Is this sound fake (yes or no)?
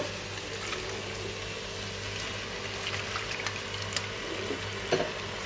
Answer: no